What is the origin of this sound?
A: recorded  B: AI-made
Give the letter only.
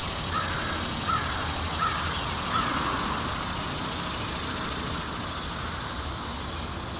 A